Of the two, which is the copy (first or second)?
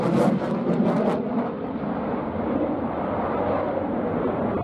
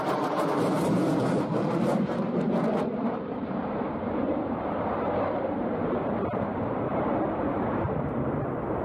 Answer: second